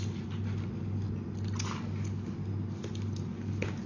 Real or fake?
real